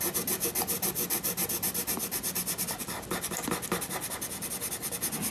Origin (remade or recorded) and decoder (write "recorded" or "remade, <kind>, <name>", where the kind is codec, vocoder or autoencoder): recorded